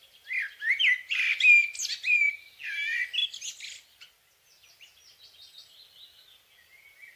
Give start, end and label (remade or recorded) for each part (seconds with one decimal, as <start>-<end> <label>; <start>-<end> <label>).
0.0-7.2 recorded